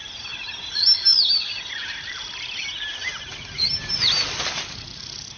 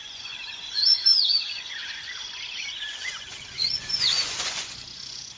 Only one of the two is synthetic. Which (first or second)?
second